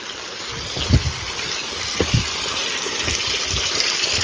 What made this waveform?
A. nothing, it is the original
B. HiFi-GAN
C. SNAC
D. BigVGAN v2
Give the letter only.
A